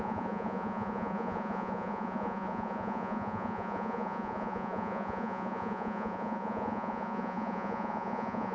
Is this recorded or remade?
remade